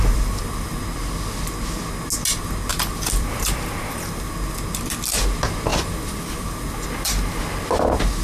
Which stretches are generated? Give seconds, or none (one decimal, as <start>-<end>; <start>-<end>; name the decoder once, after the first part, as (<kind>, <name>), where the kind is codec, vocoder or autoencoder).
0.0-0.8 (vocoder, BigVGAN v2); 2.7-4.3; 5.7-7.4